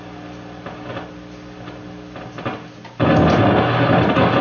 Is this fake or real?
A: real